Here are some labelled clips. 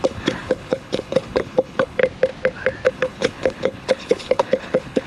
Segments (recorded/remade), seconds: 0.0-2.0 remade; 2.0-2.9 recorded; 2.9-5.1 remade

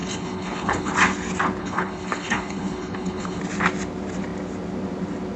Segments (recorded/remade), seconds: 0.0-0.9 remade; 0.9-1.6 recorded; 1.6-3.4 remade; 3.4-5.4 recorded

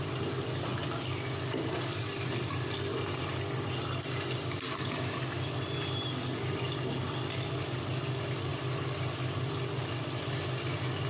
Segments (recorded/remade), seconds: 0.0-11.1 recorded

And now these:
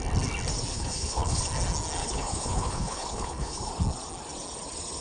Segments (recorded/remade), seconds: 0.0-0.7 recorded; 0.7-1.4 remade; 1.4-2.0 recorded; 2.0-3.7 remade; 3.7-5.0 recorded